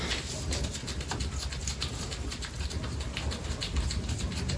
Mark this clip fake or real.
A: real